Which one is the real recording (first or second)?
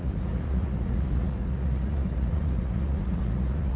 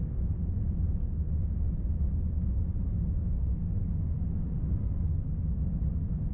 second